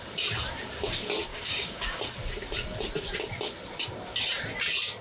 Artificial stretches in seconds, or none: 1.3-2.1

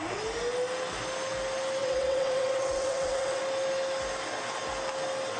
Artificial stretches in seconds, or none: 1.8-3.4

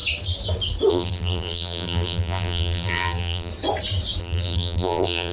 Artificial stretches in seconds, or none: 0.9-3.5; 4.2-5.3

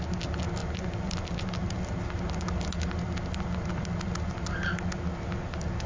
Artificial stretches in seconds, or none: none

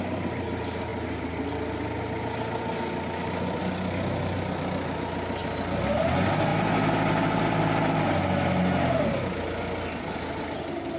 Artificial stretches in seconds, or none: none